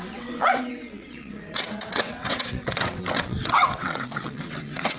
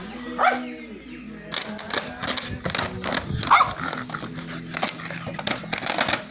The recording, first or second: second